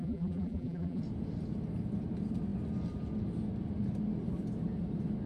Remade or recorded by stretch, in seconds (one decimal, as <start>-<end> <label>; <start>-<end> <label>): 0.0-1.0 remade; 1.0-5.3 recorded